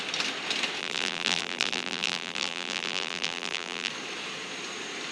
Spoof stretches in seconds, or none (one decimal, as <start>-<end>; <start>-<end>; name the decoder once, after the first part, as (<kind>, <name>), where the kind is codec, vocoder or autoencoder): 0.8-3.9 (vocoder, BigVGAN v2)

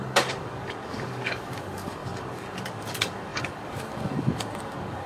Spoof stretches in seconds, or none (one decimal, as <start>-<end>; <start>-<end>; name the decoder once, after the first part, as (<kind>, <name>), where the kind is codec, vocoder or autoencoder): 0.0-5.1 (codec, DAC)